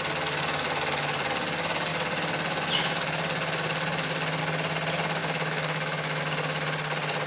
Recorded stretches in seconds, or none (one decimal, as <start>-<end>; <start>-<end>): 0.0-5.2; 6.2-7.3

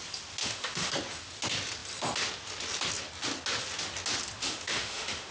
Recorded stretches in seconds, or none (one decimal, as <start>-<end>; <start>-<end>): 0.0-0.4; 0.9-4.4

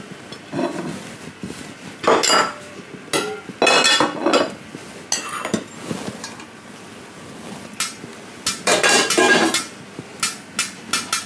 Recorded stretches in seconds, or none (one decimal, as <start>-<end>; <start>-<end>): 0.0-11.3

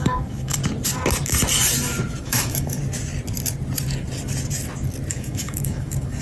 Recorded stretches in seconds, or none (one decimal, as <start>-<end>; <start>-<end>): 0.6-2.2; 2.8-5.1

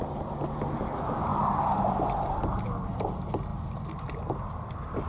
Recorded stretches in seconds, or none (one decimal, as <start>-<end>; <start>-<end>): 0.0-5.1

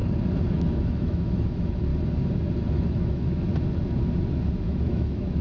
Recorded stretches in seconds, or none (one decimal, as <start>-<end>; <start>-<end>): 0.0-0.5; 1.9-2.7; 3.5-4.6